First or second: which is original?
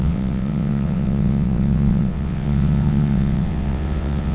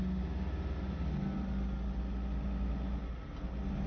second